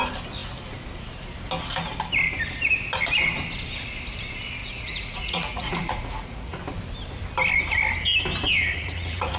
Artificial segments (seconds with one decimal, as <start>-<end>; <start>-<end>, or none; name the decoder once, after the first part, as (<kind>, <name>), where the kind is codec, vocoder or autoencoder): 4.6-6.6 (vocoder, Vocos); 8.7-9.4